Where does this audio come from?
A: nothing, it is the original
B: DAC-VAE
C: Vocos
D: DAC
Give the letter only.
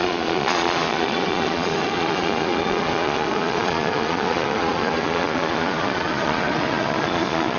C